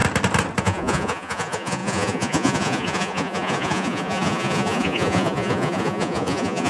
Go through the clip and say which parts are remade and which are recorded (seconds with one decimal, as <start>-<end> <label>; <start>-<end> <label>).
0.0-0.6 recorded; 0.6-6.7 remade